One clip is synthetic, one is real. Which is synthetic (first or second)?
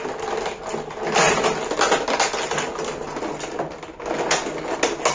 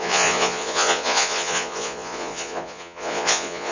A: second